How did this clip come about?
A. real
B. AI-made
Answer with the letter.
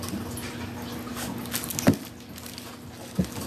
A